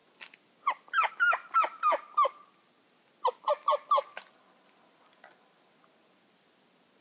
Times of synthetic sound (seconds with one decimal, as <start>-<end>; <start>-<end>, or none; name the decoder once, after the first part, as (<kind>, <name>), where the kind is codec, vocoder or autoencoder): none